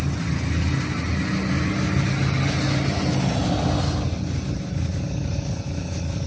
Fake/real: real